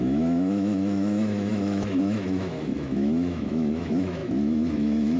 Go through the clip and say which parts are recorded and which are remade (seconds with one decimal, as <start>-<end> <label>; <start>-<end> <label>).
0.0-5.2 remade